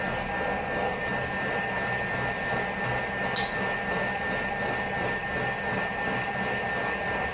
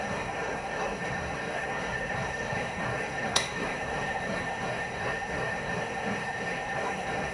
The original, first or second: first